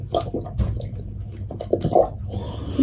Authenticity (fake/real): real